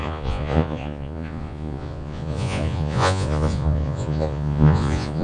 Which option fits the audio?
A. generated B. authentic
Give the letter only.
A